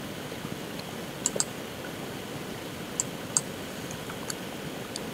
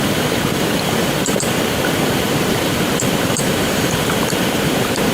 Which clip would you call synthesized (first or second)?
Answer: second